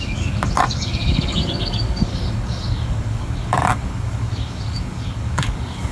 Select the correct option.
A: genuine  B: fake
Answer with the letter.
B